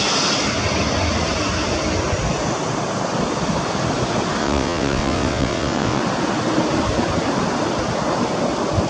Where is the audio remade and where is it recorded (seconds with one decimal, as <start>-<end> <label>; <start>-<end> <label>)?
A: 0.0-4.4 recorded; 4.4-6.0 remade; 6.0-8.9 recorded